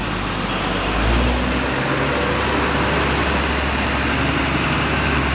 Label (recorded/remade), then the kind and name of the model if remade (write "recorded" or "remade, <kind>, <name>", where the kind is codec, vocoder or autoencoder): recorded